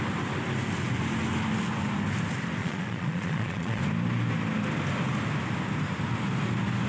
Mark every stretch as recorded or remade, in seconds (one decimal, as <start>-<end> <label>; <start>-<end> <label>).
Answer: 0.0-2.6 recorded; 2.6-3.8 remade; 3.8-6.9 recorded